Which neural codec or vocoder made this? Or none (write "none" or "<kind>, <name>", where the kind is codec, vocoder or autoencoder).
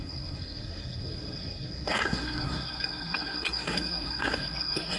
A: codec, SNAC